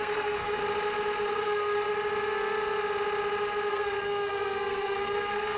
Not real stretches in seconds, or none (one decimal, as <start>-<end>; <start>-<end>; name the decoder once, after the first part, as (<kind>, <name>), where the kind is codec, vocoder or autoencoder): 0.0-0.6 (codec, SNAC); 1.3-1.9; 3.7-5.6